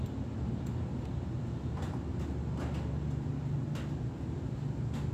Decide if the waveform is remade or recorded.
recorded